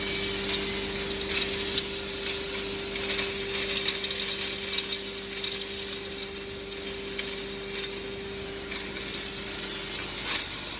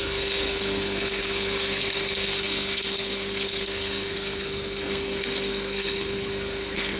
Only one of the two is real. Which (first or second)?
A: first